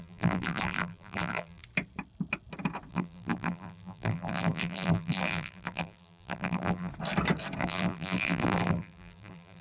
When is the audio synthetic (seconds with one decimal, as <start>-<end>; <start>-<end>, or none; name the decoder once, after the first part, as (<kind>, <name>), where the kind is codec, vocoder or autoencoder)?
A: 0.0-1.6 (vocoder, BigVGAN v2); 2.9-6.9; 7.6-9.6